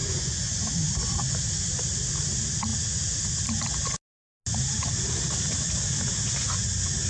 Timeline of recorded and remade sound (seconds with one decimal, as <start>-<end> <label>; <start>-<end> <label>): 0.0-0.6 remade; 0.6-7.1 recorded